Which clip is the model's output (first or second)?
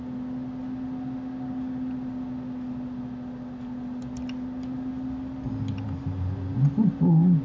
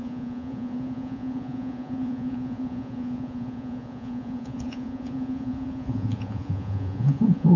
second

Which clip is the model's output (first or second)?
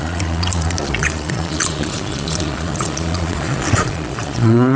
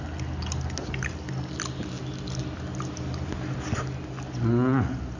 first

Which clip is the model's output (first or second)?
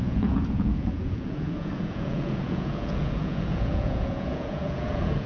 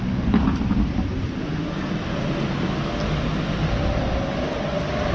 first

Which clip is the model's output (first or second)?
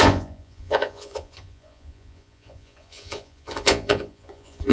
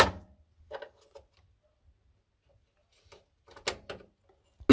first